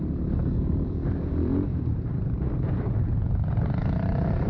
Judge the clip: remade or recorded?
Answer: remade